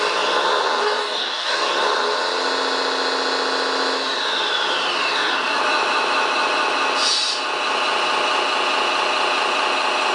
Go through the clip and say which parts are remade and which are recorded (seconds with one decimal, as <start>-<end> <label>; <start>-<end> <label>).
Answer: 0.0-0.8 recorded; 0.8-1.7 remade; 1.7-10.1 recorded